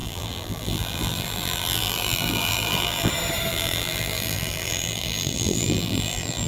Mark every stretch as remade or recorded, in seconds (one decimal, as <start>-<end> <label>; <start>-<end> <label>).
0.0-3.1 remade; 3.1-3.5 recorded; 3.5-6.5 remade